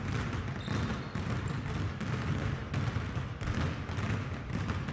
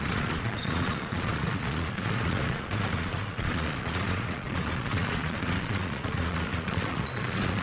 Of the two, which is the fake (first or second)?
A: second